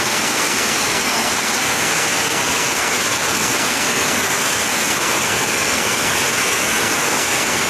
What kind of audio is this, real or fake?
fake